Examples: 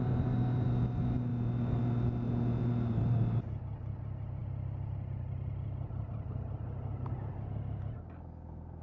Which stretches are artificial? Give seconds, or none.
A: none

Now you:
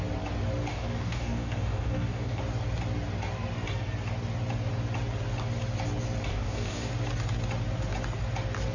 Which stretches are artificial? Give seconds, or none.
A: 0.7-2.4 (codec, DAC); 6.3-6.9

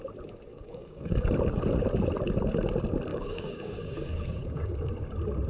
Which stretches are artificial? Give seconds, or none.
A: 0.5-1.3 (codec, DAC); 3.1-4.9

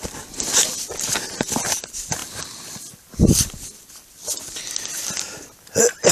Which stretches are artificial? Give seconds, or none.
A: none